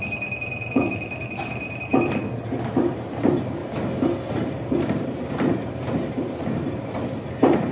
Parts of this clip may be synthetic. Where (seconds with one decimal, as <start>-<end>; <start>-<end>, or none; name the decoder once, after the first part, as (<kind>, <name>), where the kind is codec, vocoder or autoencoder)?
0.0-1.9 (vocoder, BigVGAN v2); 2.7-3.6; 4.3-7.7

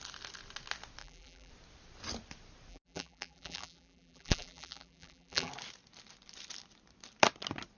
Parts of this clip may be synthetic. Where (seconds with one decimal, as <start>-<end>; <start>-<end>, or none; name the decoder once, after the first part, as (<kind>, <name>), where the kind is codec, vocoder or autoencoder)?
1.0-1.5 (vocoder, BigVGAN v2); 2.7-5.5

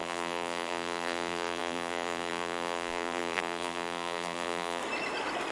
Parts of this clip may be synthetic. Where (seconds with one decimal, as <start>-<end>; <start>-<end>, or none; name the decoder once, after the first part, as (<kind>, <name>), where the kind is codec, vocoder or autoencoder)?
0.0-4.8 (vocoder, BigVGAN v2)

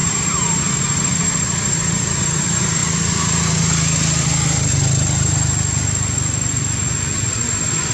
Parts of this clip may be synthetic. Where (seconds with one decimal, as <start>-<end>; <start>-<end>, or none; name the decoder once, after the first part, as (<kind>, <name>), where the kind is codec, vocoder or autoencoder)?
0.0-2.8 (vocoder, BigVGAN v2); 7.5-7.9